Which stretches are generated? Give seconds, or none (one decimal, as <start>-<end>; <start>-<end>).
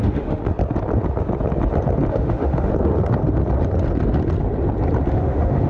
0.0-0.4; 2.1-2.7; 5.1-5.7